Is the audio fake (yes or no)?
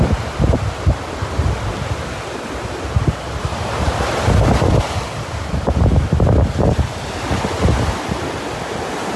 no